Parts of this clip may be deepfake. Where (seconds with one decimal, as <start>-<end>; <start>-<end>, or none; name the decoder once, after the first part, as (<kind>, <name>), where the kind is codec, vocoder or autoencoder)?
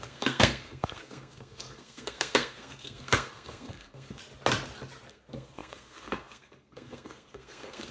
0.0-4.2 (codec, SNAC); 5.1-7.9